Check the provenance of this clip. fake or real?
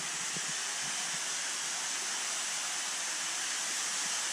real